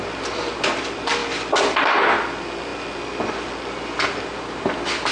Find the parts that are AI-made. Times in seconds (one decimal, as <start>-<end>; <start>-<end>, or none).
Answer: 1.2-1.8